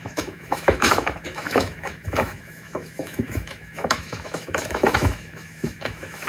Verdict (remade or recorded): remade